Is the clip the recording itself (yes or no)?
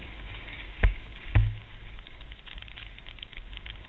no